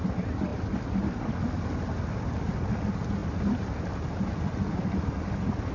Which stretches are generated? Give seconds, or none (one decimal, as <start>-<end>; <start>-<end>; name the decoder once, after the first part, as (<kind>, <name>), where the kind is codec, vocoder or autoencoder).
none